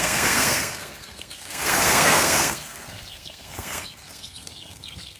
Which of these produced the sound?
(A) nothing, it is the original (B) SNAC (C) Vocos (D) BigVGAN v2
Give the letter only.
B